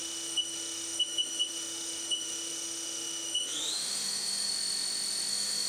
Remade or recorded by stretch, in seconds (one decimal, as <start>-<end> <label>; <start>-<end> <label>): 0.0-4.5 remade; 4.5-5.3 recorded; 5.3-5.7 remade